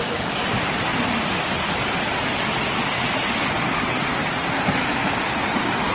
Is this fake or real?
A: real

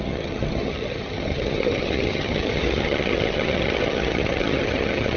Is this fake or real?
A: fake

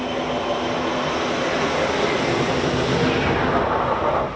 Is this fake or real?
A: real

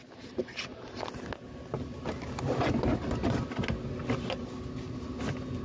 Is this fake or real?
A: real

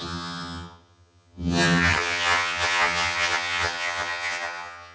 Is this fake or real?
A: fake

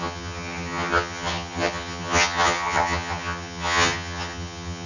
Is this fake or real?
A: fake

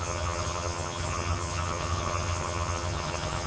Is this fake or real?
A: fake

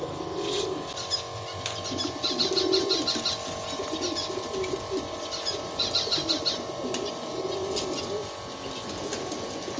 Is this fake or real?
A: real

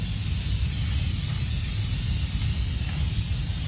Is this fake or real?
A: real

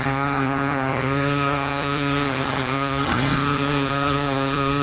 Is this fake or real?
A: fake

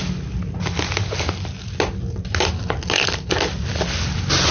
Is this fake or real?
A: real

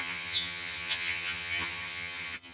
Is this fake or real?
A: fake